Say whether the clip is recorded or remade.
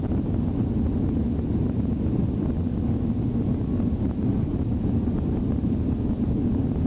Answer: recorded